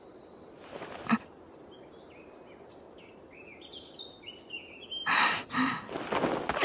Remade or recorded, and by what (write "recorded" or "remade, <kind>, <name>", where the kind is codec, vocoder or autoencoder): recorded